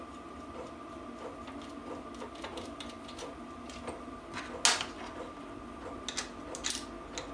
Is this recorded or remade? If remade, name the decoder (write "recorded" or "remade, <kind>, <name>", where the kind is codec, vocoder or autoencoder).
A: recorded